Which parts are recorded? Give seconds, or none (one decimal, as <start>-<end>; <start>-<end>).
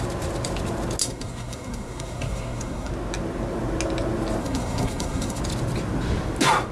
0.0-1.0; 2.9-4.4; 5.4-6.7